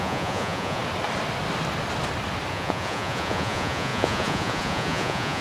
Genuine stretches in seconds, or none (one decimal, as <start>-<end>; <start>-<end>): 0.8-2.5